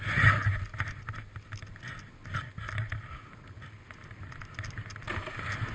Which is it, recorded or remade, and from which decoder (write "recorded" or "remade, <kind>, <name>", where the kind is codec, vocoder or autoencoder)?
recorded